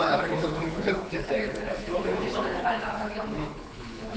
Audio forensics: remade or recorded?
remade